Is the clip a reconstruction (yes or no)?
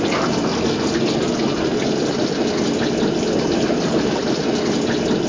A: no